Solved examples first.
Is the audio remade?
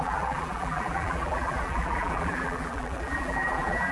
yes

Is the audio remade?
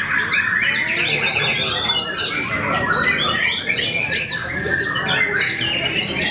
no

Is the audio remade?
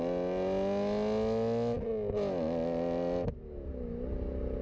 no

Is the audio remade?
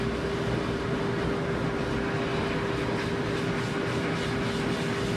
no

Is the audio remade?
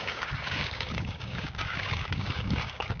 yes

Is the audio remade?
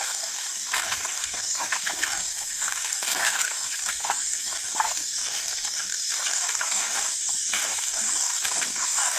yes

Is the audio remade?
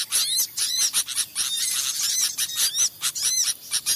no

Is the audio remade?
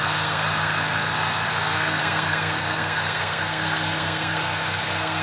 yes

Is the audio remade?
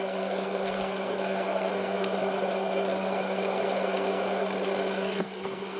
yes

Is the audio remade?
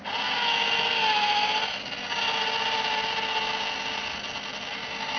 no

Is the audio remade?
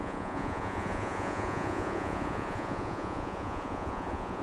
yes